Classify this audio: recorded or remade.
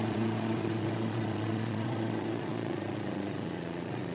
remade